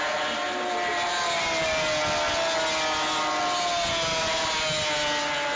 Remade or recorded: recorded